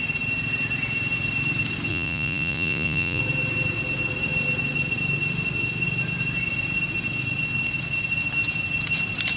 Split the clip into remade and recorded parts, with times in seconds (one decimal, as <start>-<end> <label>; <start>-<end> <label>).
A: 0.0-1.9 recorded; 1.9-3.2 remade; 3.2-9.4 recorded